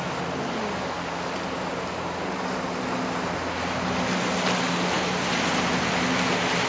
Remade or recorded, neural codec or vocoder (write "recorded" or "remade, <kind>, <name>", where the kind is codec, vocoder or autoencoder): recorded